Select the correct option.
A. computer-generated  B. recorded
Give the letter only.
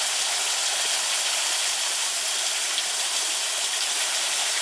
B